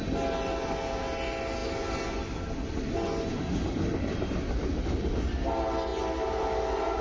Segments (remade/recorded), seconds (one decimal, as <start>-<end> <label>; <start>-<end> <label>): 0.0-7.0 recorded